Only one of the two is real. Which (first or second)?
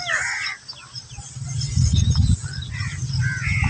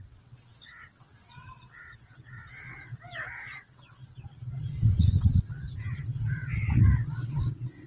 first